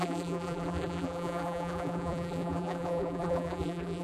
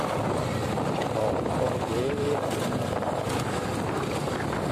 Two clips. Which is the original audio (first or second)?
second